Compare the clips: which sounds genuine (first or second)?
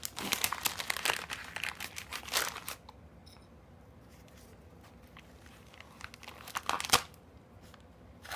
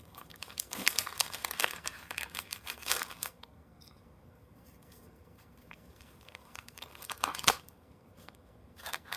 first